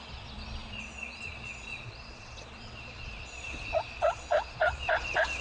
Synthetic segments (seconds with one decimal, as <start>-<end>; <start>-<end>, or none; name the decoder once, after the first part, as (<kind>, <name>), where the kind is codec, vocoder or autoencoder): 0.0-5.4 (vocoder, Vocos)